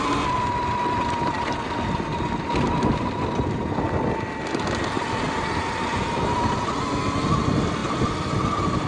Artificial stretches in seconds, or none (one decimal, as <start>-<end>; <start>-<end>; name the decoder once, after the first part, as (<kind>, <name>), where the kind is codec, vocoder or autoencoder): none